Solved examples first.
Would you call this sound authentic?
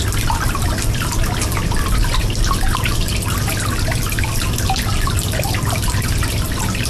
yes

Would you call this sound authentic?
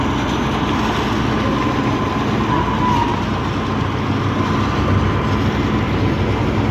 yes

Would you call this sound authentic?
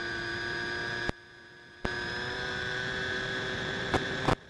no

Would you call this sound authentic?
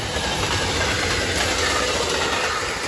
yes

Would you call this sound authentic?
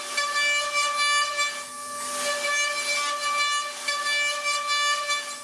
yes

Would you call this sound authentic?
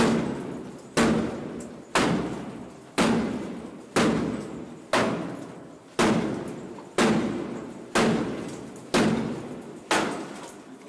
yes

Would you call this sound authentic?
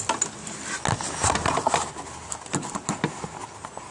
yes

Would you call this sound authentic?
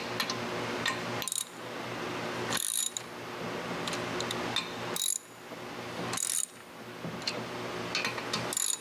yes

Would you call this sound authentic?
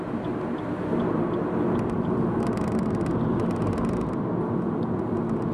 yes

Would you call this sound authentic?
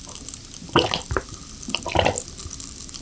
yes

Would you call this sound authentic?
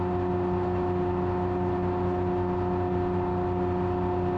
yes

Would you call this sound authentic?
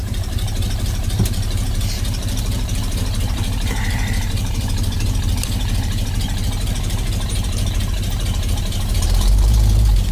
no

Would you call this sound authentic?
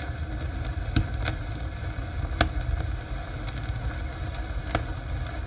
yes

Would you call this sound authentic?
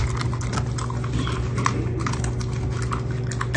yes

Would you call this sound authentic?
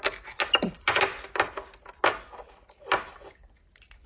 yes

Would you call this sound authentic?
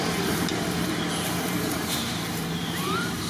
no